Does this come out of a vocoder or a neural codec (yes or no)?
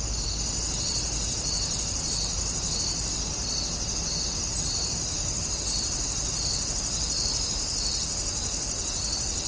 no